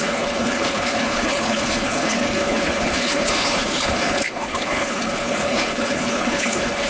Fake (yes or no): yes